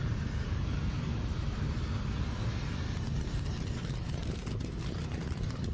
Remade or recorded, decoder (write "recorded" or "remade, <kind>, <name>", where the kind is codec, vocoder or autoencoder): remade, vocoder, BigVGAN v2